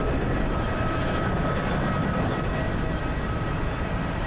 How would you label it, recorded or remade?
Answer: remade